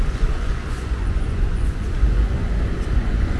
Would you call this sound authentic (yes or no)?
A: no